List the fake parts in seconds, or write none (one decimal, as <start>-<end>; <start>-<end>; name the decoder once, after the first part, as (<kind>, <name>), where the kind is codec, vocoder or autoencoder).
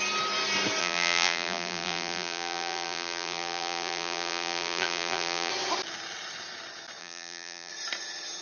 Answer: 0.8-5.5 (vocoder, BigVGAN v2); 7.0-7.7